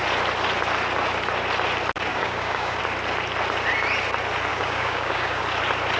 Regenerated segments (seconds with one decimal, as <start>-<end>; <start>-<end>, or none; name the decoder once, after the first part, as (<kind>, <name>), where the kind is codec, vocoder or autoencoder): 2.1-2.8 (codec, DAC); 4.5-5.4

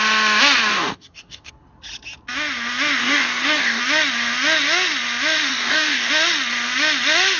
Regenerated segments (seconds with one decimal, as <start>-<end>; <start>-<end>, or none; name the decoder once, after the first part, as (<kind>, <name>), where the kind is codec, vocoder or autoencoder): 0.7-1.5 (codec, DAC); 3.0-3.8; 5.5-6.1